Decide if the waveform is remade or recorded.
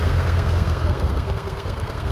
remade